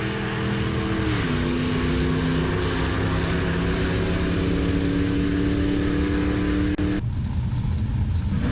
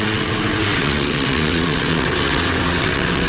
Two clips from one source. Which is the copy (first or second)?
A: second